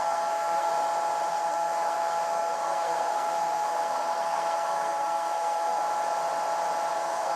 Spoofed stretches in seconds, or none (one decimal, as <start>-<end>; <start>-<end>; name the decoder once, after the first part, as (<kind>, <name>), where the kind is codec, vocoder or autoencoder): 0.0-0.7 (codec, SNAC); 1.3-5.8; 6.9-7.4